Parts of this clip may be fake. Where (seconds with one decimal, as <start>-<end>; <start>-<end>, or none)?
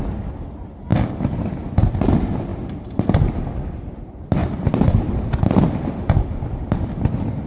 none